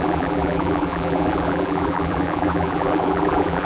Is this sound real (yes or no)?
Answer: no